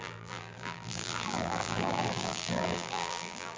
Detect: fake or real fake